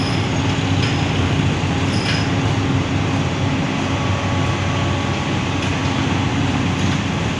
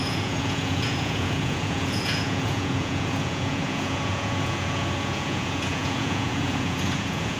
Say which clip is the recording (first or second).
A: first